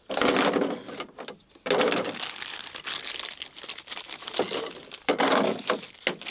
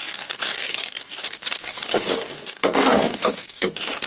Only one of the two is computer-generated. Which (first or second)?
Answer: second